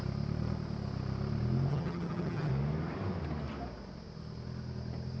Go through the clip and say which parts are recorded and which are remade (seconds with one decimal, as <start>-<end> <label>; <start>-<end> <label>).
0.0-1.7 recorded; 1.7-2.5 remade; 2.5-5.2 recorded